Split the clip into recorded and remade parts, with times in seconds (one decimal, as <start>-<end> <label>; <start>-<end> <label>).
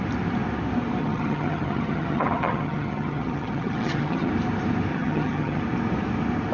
0.0-1.0 recorded; 1.0-4.3 remade; 4.3-4.9 recorded; 4.9-5.6 remade; 5.6-6.5 recorded